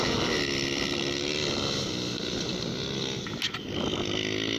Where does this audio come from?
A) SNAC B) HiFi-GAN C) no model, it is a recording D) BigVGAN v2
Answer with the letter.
C